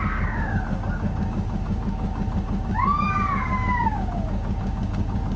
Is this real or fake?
fake